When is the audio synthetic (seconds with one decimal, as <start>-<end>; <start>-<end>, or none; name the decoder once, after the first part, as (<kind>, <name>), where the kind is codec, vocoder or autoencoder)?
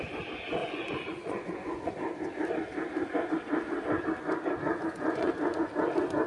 0.6-1.9 (vocoder, Vocos); 4.7-5.7